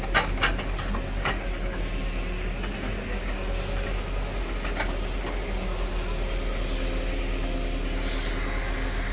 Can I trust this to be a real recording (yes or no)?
yes